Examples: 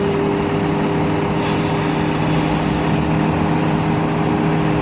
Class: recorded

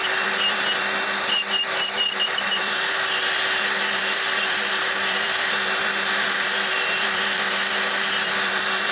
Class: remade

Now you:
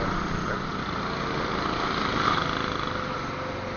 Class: recorded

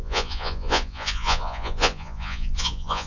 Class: remade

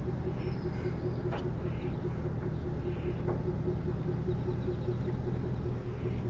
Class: recorded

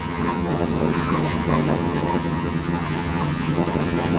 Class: remade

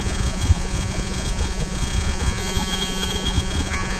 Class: remade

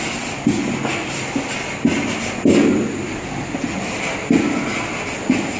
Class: recorded